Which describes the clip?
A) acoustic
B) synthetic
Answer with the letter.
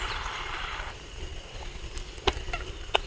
B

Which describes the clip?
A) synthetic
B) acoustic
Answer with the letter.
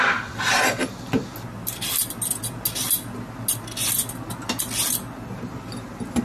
B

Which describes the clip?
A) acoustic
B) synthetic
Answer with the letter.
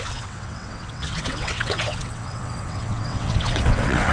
B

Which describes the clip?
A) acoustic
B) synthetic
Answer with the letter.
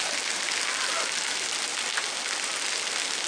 A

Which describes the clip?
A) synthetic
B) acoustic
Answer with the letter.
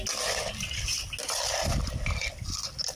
B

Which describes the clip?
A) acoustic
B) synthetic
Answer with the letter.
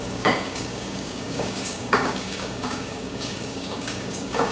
B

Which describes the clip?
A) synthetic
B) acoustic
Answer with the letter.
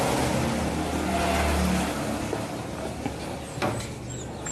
B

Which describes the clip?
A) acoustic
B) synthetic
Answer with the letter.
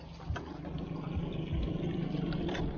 A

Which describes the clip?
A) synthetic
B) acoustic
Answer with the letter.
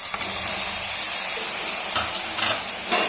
B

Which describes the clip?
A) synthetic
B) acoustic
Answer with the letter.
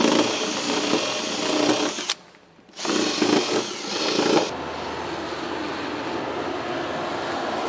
B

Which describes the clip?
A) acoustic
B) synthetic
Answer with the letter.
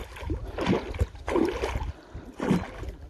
A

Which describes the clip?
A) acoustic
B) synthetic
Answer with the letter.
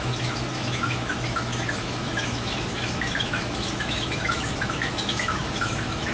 B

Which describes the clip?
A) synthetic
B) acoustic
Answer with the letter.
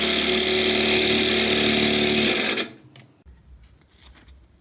B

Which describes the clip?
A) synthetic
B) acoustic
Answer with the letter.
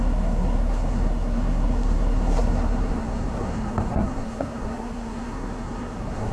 A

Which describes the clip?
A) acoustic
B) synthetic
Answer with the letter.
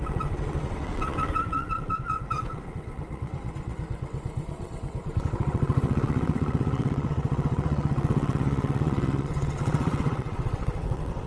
B